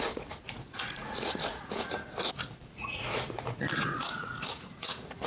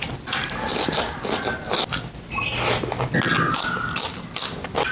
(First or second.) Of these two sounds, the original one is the second